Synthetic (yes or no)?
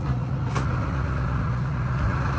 yes